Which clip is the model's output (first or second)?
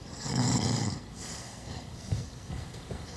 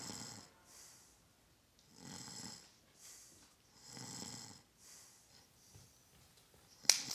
first